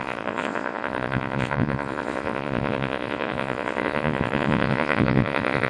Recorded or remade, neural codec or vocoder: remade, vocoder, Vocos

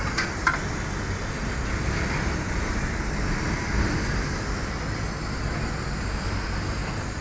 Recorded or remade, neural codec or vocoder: recorded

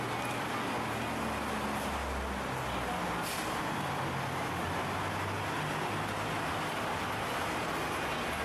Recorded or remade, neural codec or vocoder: recorded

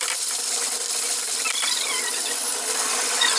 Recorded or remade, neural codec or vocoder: recorded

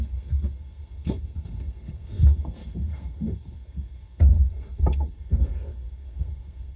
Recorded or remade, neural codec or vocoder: remade, codec, SNAC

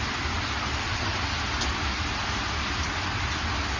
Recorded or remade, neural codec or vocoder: recorded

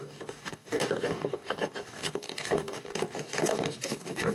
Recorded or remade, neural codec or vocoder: remade, codec, DAC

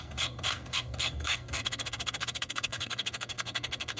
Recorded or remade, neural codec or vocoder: remade, codec, SNAC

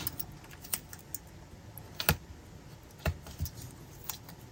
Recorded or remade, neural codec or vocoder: recorded